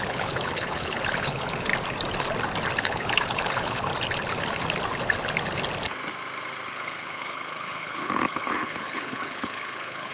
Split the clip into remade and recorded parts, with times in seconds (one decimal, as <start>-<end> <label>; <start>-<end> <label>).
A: 0.0-1.7 remade; 1.7-2.8 recorded; 2.8-3.9 remade; 3.9-6.7 recorded; 6.7-10.1 remade